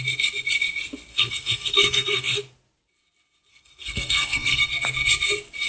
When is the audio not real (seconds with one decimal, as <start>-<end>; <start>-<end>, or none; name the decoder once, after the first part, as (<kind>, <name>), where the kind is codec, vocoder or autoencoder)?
1.1-2.4 (codec, SNAC); 3.5-4.7